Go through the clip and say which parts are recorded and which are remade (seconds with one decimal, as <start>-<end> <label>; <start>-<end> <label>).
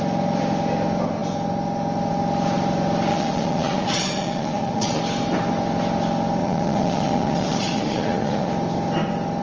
0.0-3.1 recorded; 3.1-5.0 remade; 5.0-6.4 recorded; 6.4-8.5 remade; 8.5-9.4 recorded